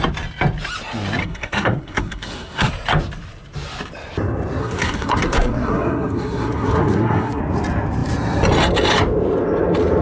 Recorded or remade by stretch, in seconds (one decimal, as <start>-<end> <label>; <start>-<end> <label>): 0.0-1.2 recorded; 1.2-2.7 remade; 2.7-4.6 recorded; 4.6-7.4 remade; 7.4-10.0 recorded